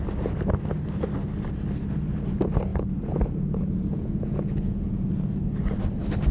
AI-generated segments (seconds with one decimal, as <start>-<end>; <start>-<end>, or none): 2.7-5.4